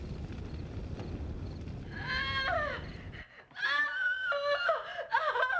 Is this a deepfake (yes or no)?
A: no